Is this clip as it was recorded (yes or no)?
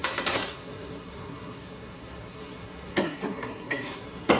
no